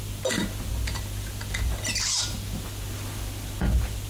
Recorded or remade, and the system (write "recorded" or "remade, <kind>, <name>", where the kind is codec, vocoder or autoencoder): recorded